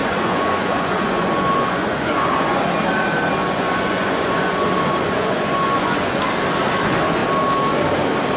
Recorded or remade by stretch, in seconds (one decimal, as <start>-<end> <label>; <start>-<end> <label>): 0.0-2.7 remade; 2.7-3.4 recorded; 3.4-6.2 remade; 6.2-8.4 recorded